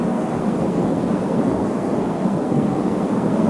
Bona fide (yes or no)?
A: no